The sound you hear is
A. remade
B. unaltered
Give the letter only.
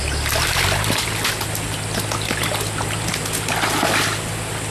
B